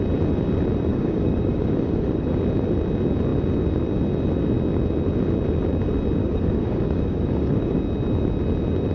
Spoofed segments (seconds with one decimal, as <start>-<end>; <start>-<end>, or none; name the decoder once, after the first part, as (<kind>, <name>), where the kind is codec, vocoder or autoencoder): 0.9-2.4 (codec, DAC); 6.2-7.8